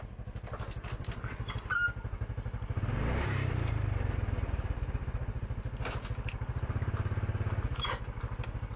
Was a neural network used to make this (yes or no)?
no